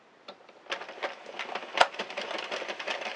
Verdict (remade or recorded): recorded